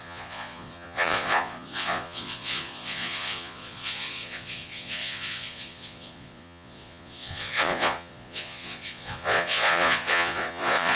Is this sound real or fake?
fake